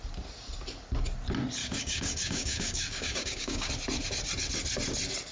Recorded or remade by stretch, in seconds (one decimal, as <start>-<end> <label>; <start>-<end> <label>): 0.0-1.6 recorded; 1.6-3.7 remade; 3.7-5.3 recorded